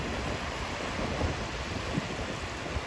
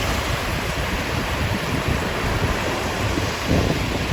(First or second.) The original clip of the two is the first